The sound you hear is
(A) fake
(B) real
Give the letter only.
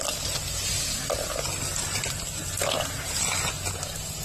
B